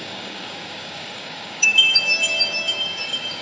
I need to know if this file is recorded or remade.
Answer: remade